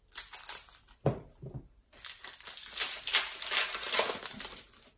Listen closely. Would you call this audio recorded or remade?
recorded